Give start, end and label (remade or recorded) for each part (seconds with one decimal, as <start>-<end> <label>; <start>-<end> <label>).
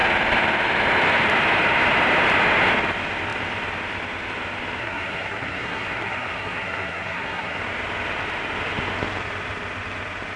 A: 0.0-4.8 recorded; 4.8-7.6 remade; 7.6-10.4 recorded